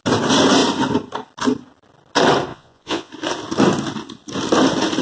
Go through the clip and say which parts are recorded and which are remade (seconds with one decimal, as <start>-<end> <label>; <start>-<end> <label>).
0.0-2.5 recorded; 2.5-3.1 remade; 3.1-5.0 recorded